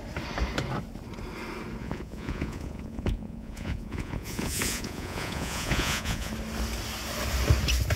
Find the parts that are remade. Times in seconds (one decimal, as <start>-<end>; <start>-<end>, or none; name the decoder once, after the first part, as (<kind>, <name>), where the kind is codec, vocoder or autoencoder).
1.8-6.3 (vocoder, Vocos)